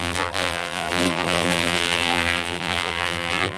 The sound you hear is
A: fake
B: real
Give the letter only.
A